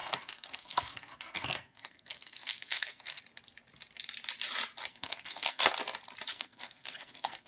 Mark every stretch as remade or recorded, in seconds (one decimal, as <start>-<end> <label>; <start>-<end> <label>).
0.0-3.2 remade; 3.2-4.9 recorded; 4.9-5.7 remade; 5.7-6.3 recorded; 6.3-7.5 remade